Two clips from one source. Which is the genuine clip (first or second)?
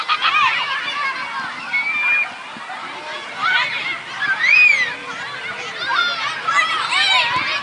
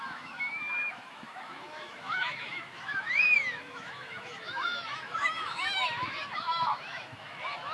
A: first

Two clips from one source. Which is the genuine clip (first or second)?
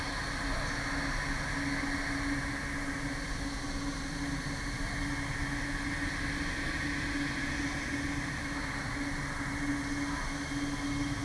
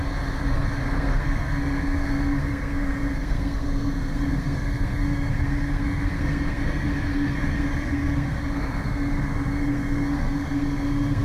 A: first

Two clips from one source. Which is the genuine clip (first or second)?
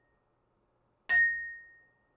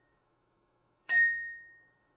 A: first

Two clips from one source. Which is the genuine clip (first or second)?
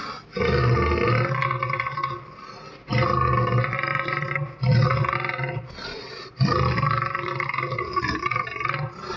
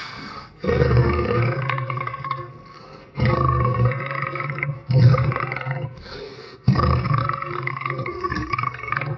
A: first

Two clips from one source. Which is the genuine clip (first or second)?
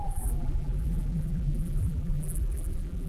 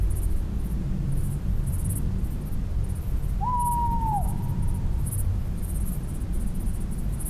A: second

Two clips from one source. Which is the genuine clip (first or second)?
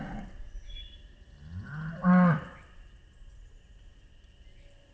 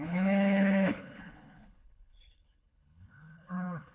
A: first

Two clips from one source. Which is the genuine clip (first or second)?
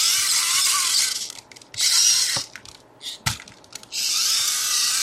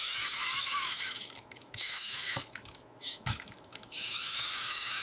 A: first